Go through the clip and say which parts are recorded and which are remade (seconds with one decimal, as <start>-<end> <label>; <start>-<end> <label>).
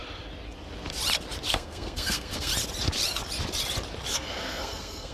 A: 0.0-1.5 recorded; 1.5-2.5 remade; 2.5-4.1 recorded; 4.1-5.1 remade